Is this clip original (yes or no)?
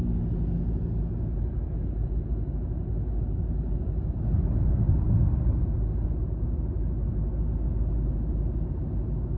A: yes